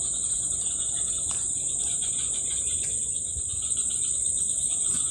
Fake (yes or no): yes